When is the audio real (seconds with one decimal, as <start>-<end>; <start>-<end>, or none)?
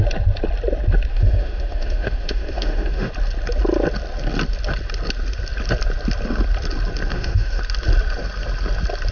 0.0-1.1; 3.1-7.1; 7.6-9.1